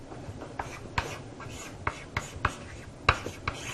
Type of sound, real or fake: real